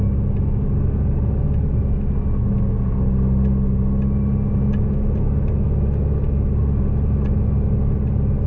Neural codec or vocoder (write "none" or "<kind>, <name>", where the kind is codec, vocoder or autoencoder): none